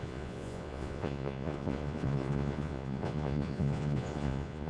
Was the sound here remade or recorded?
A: remade